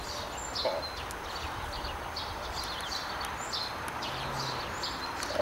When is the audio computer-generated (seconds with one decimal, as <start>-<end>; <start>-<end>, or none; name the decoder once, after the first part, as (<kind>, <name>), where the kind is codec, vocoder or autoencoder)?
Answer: 0.0-0.7 (vocoder, BigVGAN v2); 3.9-5.4